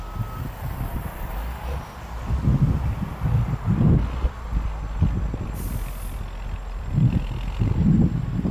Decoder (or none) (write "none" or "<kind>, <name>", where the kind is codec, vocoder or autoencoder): none